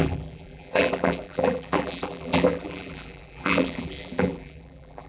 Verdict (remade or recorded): remade